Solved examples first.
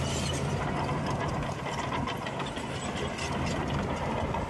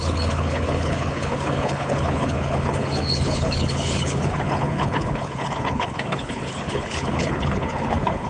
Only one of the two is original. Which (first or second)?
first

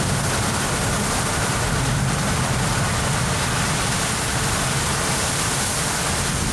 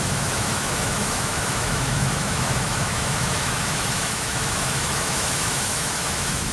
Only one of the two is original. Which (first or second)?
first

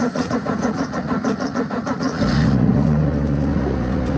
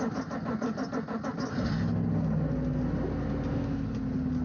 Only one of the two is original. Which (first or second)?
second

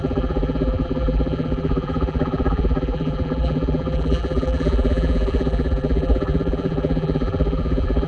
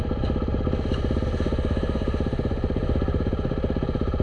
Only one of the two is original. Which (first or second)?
second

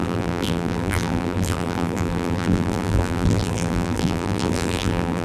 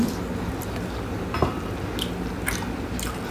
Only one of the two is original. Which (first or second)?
second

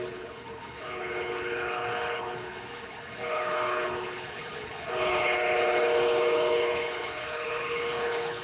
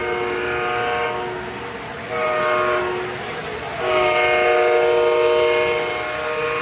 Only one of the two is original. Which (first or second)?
second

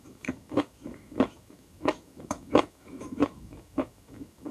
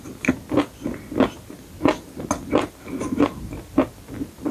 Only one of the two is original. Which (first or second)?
second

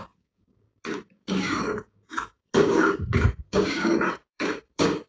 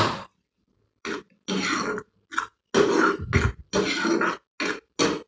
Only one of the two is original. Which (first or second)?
second